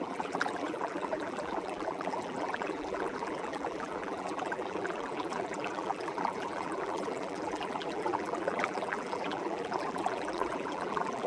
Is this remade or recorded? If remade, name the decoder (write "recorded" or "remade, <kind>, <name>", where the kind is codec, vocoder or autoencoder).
remade, vocoder, BigVGAN v2